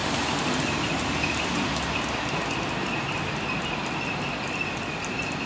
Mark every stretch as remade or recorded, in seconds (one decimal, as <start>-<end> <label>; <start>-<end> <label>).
0.0-5.5 recorded